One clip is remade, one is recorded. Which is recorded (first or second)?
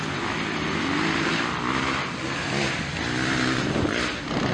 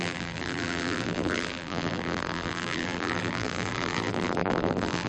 first